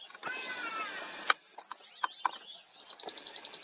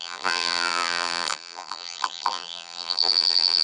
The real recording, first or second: first